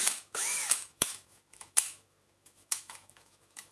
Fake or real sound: fake